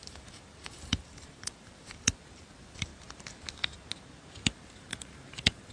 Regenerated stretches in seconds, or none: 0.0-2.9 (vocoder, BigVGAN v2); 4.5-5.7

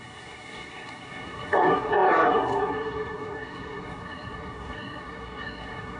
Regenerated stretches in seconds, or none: 0.0-6.0 (codec, SNAC)

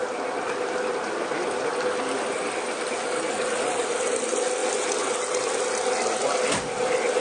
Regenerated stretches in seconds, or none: none

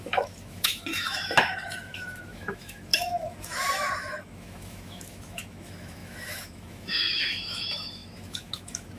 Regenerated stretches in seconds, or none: 0.0-9.0 (autoencoder, DAC-VAE)

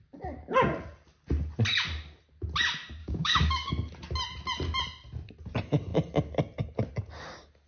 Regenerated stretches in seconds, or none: 3.0-3.7 (codec, DAC)

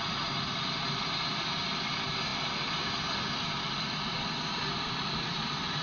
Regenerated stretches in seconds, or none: none

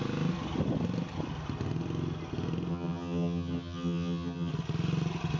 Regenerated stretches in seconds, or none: 2.7-4.5 (vocoder, HiFi-GAN)